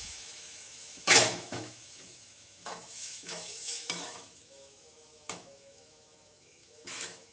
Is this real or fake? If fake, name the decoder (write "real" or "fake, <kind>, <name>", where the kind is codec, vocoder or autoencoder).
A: fake, autoencoder, DAC-VAE